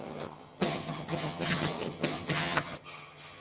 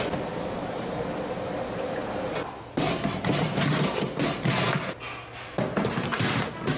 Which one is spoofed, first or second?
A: first